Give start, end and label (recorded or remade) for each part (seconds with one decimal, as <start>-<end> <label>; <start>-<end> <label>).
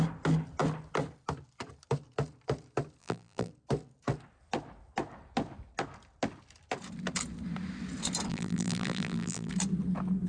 0.0-3.0 recorded; 3.0-3.5 remade; 3.5-8.3 recorded; 8.3-9.5 remade; 9.5-10.3 recorded